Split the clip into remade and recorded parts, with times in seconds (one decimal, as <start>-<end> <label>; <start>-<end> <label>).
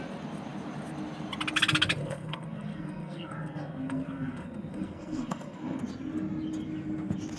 0.0-2.0 recorded; 2.0-5.8 remade; 5.8-7.4 recorded